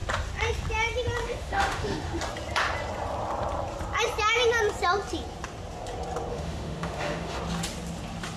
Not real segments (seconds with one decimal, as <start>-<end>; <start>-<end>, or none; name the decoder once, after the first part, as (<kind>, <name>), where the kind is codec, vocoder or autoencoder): 1.2-2.2 (autoencoder, DAC-VAE); 6.3-7.4